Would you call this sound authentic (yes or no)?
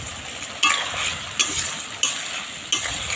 yes